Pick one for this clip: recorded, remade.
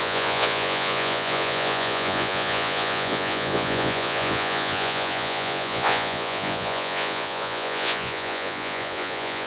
remade